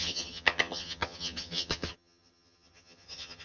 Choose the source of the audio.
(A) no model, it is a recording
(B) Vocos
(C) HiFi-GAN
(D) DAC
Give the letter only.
C